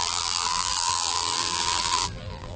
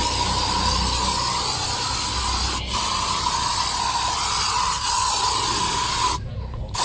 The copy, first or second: first